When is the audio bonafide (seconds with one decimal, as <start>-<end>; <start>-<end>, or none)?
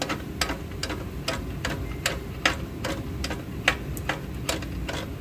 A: 0.0-5.2